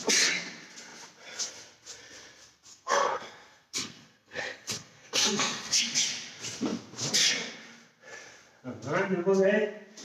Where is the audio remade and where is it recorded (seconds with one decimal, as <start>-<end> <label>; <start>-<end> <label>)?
0.0-2.7 recorded; 2.7-5.8 remade; 5.8-10.0 recorded